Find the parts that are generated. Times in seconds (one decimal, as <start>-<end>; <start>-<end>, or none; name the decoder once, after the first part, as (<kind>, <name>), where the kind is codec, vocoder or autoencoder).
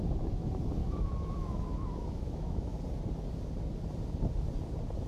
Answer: 0.8-2.8 (autoencoder, DAC-VAE)